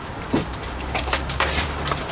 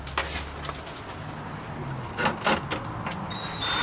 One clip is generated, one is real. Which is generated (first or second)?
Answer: first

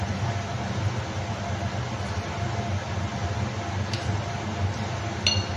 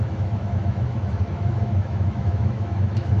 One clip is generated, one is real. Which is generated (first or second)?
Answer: second